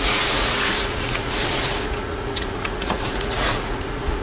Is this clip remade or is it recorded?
remade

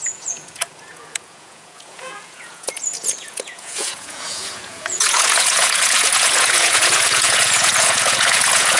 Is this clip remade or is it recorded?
remade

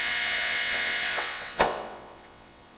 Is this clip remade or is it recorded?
remade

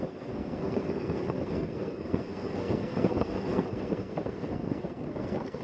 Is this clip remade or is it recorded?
remade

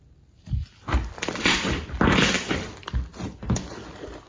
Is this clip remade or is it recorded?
recorded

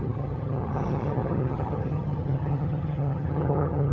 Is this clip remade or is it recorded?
remade